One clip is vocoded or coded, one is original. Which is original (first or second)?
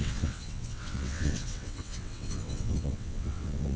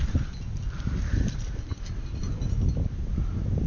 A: second